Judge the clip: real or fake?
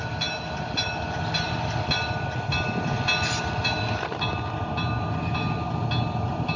real